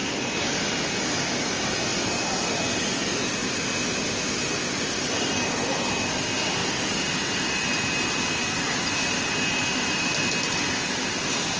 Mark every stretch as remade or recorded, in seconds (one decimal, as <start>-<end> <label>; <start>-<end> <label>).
0.0-0.7 remade; 0.7-6.6 recorded; 6.6-10.3 remade; 10.3-11.6 recorded